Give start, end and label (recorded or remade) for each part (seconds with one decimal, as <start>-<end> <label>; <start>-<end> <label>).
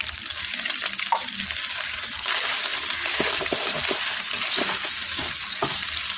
0.0-6.2 recorded